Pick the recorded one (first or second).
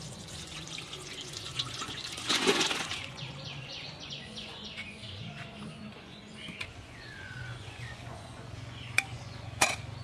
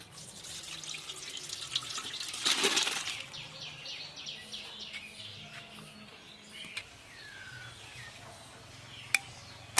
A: second